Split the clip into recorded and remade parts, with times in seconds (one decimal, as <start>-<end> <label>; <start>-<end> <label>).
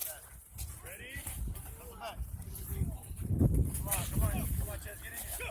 0.0-3.3 remade; 3.3-5.5 recorded